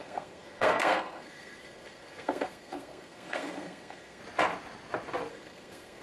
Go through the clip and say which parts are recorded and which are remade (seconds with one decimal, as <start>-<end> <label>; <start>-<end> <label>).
0.0-4.2 remade; 4.2-5.3 recorded; 5.3-6.0 remade